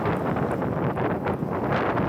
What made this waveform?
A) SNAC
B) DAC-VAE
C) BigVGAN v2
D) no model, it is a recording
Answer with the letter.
C